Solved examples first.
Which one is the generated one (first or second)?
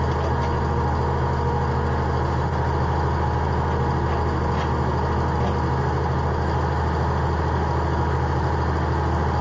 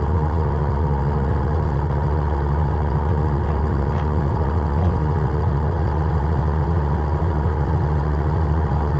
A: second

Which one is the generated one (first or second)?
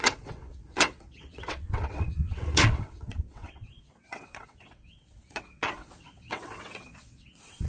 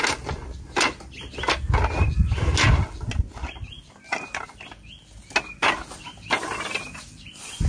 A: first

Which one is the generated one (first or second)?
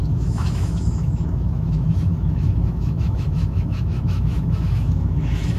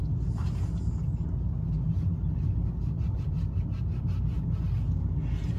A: first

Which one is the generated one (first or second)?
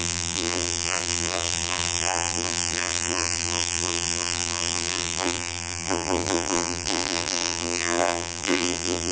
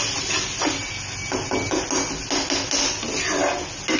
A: first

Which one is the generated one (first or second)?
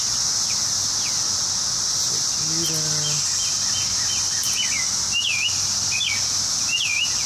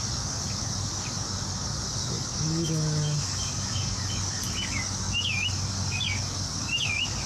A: second